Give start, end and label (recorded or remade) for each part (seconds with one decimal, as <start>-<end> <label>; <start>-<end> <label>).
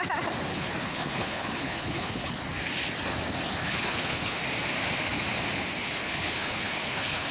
0.0-0.5 recorded; 0.5-2.3 remade; 2.3-3.6 recorded; 3.6-4.4 remade; 4.4-5.8 recorded; 5.8-7.3 remade